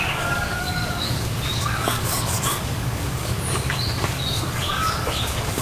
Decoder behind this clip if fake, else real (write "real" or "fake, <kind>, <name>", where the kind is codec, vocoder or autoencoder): fake, codec, DAC